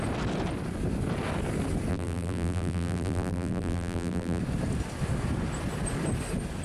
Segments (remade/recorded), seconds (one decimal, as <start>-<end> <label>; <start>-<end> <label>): 0.0-1.9 recorded; 1.9-4.4 remade; 4.4-6.6 recorded